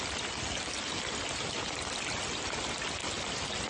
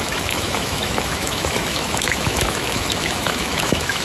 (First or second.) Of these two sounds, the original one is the first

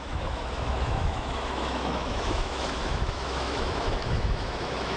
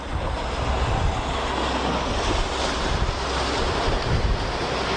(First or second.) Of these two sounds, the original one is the second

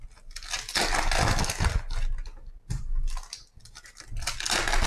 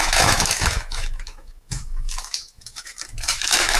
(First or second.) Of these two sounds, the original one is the first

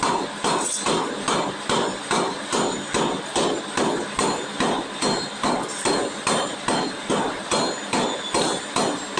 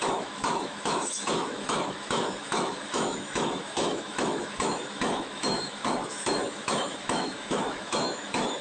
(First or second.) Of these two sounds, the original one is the first